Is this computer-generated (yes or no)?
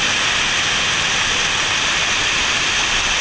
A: no